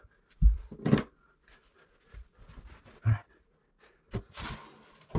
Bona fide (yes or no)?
yes